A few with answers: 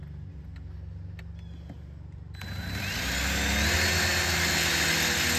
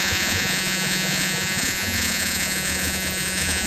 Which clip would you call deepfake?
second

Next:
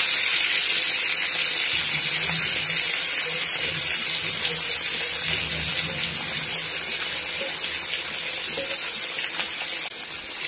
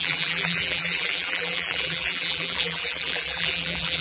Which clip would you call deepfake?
second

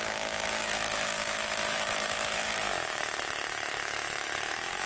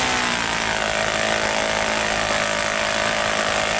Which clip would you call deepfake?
first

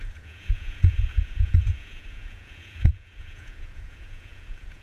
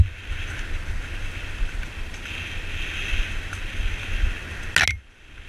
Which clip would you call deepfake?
first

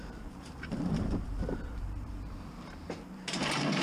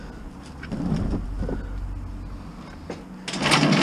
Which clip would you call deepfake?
first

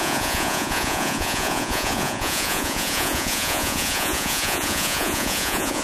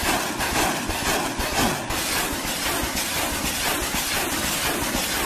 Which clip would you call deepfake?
first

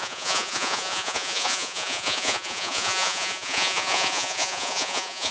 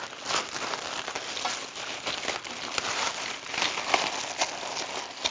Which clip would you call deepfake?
first